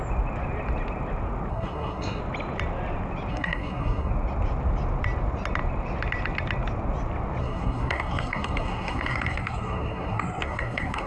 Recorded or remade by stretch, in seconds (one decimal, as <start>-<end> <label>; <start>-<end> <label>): 0.0-1.5 recorded; 1.5-2.2 remade; 2.2-3.3 recorded; 3.3-4.1 remade; 4.1-7.4 recorded; 7.4-11.1 remade